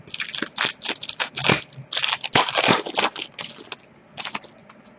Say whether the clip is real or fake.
real